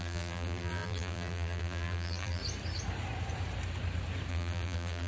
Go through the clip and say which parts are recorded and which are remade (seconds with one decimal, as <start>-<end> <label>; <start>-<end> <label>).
0.0-2.4 remade; 2.4-4.3 recorded; 4.3-5.1 remade

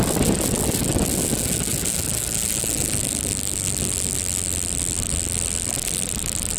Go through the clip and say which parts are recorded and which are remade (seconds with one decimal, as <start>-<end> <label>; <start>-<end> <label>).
0.0-6.6 recorded

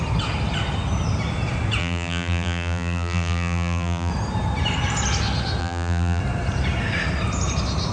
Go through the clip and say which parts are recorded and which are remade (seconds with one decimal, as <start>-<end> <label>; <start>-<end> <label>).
0.0-1.8 recorded; 1.8-4.1 remade; 4.1-5.6 recorded; 5.6-6.2 remade; 6.2-7.9 recorded

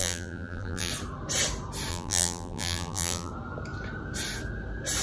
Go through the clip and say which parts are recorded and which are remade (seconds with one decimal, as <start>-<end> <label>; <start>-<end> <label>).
0.0-0.9 remade; 0.9-1.9 recorded; 1.9-3.3 remade; 3.3-5.0 recorded

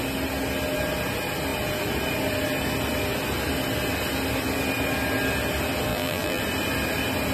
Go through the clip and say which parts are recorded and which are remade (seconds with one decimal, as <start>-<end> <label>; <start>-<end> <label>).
0.0-5.9 recorded; 5.9-6.4 remade; 6.4-7.3 recorded

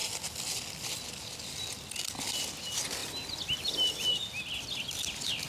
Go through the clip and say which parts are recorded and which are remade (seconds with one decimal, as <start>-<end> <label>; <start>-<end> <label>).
0.0-5.5 recorded

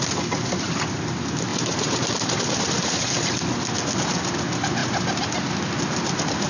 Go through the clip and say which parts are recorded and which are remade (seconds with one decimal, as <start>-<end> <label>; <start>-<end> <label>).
0.0-1.5 recorded; 1.5-3.1 remade; 3.1-6.5 recorded